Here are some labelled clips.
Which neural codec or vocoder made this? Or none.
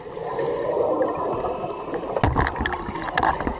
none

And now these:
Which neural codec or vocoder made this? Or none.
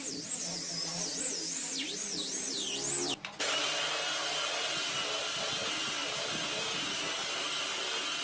none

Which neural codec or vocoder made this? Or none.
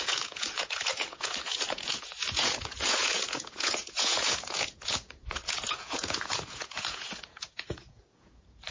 vocoder, Vocos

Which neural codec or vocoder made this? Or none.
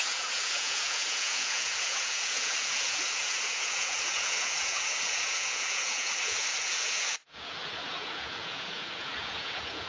vocoder, Vocos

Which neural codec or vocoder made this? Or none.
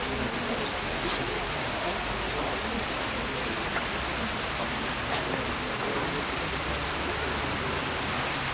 none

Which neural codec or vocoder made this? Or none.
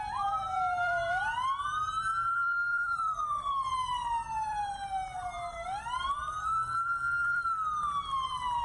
vocoder, BigVGAN v2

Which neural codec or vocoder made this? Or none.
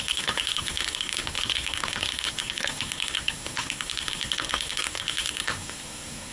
codec, SNAC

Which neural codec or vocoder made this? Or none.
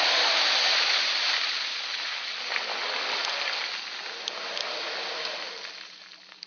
none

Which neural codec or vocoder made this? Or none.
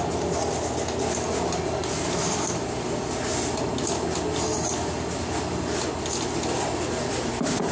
none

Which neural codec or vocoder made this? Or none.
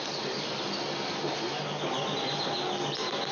none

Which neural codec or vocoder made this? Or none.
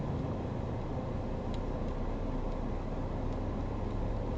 none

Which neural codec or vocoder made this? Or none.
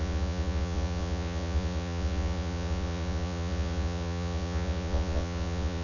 vocoder, Vocos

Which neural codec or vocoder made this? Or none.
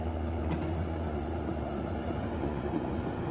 vocoder, Vocos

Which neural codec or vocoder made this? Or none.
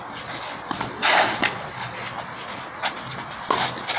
none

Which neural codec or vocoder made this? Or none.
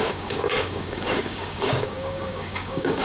codec, DAC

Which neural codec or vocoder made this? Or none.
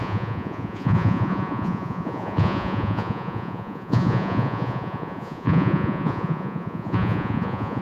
vocoder, Vocos